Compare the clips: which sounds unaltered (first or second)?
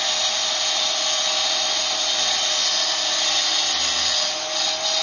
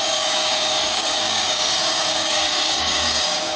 first